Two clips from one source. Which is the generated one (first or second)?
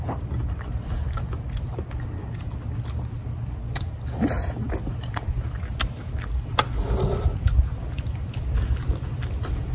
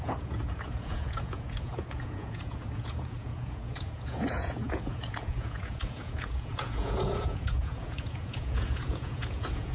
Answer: second